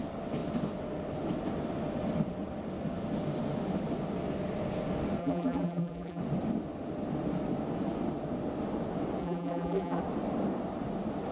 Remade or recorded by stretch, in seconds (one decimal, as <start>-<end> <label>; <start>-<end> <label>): 0.0-5.2 recorded; 5.2-6.2 remade; 6.2-9.2 recorded; 9.2-10.0 remade; 10.0-11.3 recorded